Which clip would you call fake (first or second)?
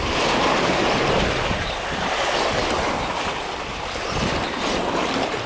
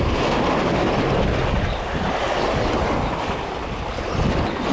first